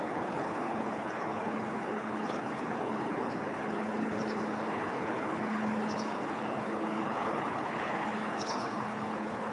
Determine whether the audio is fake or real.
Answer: fake